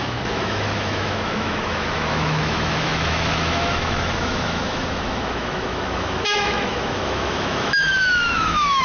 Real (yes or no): no